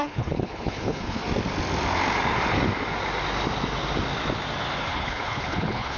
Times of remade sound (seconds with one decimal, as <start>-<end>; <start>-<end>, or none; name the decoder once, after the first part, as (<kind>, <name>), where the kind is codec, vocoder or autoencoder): 0.0-1.2 (codec, HILCodec); 4.8-6.0